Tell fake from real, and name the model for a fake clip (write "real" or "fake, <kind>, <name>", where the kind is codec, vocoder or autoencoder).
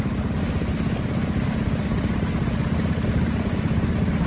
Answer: real